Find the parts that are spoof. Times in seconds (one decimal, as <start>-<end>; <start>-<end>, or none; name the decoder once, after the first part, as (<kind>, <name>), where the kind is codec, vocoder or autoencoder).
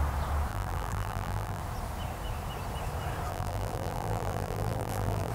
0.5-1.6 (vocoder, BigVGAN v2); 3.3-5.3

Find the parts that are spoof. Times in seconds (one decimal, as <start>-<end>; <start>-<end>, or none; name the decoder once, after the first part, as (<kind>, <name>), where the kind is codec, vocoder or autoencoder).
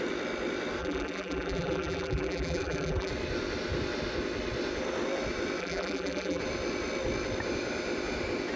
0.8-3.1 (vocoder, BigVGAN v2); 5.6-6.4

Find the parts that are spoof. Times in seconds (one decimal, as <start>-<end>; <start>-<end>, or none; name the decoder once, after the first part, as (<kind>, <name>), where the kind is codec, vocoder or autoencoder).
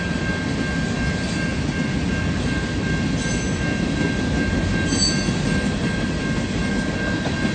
none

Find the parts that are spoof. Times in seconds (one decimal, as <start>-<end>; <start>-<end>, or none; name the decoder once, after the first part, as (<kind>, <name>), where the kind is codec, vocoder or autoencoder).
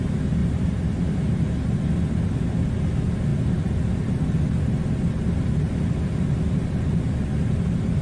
0.4-1.5 (vocoder, BigVGAN v2)